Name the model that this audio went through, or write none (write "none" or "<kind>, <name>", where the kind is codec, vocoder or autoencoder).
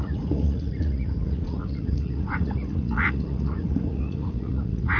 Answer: vocoder, Vocos